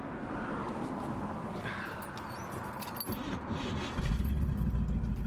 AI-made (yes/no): no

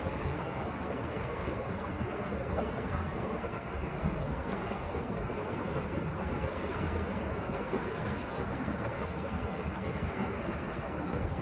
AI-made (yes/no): yes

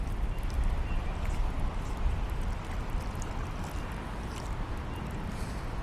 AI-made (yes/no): no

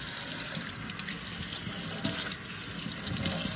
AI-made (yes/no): no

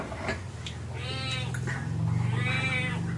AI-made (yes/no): no